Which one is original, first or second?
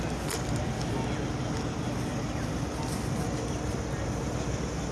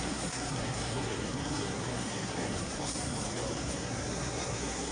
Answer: first